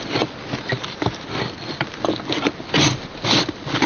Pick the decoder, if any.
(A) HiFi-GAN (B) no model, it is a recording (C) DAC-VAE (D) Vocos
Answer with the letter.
B